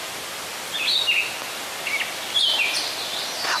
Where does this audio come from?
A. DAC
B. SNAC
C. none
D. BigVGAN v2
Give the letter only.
C